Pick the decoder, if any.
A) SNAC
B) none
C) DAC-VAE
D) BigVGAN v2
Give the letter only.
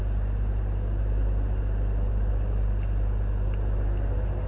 B